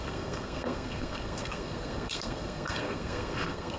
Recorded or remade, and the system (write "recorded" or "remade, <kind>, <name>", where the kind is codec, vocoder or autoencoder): remade, codec, SNAC